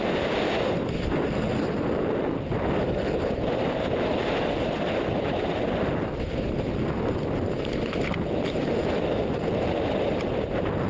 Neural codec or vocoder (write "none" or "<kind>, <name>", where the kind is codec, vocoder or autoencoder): none